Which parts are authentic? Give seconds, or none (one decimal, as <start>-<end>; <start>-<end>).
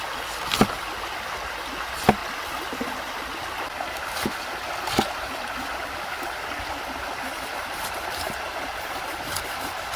0.0-10.0